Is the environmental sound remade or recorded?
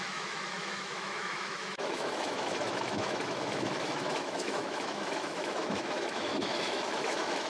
remade